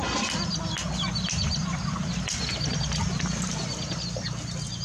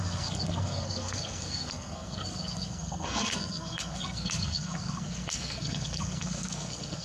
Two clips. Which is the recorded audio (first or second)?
first